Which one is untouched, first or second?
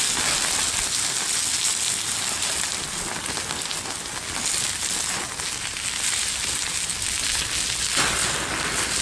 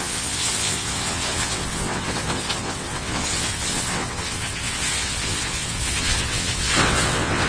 first